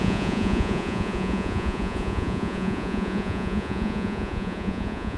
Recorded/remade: remade